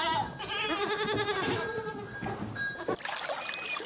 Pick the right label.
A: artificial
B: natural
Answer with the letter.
B